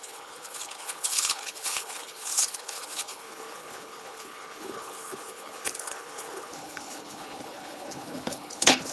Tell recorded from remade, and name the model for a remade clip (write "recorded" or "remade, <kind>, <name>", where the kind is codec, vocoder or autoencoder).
remade, codec, HILCodec